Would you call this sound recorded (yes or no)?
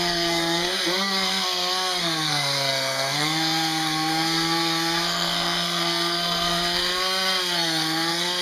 no